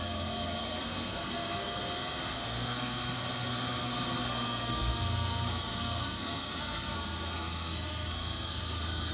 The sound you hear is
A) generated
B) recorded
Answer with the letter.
A